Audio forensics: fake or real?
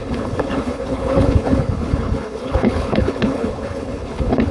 fake